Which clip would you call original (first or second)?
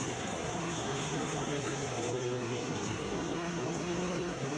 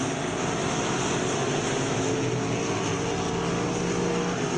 second